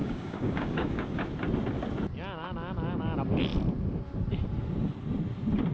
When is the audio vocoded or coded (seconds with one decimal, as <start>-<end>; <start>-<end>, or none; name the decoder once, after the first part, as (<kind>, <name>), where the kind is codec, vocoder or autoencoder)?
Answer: 0.0-1.3 (codec, DAC)